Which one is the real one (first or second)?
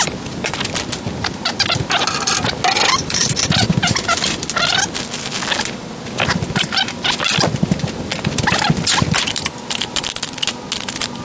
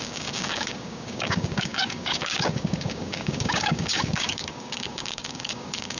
first